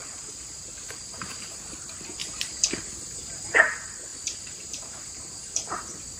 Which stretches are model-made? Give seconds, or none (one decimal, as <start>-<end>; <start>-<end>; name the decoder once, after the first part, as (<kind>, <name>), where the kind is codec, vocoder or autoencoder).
0.0-1.6 (vocoder, BigVGAN v2); 2.2-3.6; 4.1-5.8